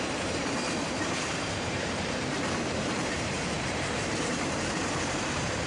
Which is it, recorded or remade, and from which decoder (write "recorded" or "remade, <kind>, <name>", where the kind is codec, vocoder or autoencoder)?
remade, vocoder, BigVGAN v2